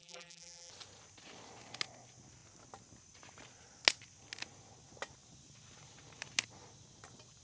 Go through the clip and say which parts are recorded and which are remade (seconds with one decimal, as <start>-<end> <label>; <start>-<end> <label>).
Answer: 0.0-0.7 remade; 0.7-7.4 recorded